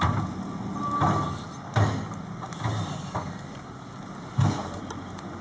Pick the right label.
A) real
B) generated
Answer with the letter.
A